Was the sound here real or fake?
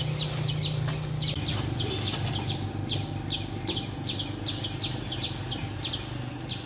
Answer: real